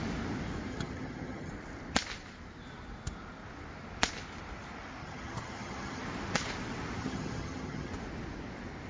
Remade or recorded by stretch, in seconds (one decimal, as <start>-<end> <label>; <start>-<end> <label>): 0.0-0.7 recorded; 0.7-1.5 remade; 1.5-5.0 recorded; 5.0-6.0 remade; 6.0-7.0 recorded; 7.0-7.9 remade; 7.9-8.9 recorded